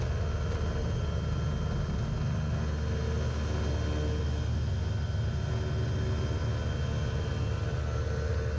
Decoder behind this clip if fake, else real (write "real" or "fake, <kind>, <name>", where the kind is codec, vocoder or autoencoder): real